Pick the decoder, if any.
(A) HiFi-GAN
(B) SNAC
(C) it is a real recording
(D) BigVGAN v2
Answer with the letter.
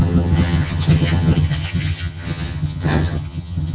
A